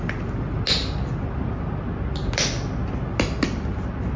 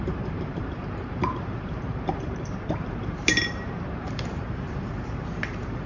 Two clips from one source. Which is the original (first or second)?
first